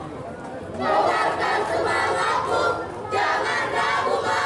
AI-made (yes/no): no